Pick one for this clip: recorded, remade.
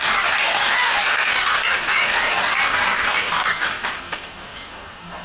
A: remade